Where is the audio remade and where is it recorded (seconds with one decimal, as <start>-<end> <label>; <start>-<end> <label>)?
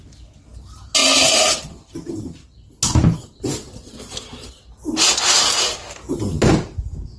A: 0.0-1.0 recorded; 1.0-2.5 remade; 2.5-7.2 recorded